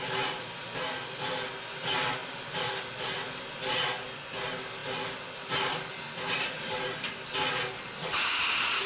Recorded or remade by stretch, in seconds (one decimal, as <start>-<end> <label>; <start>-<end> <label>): 0.0-8.9 recorded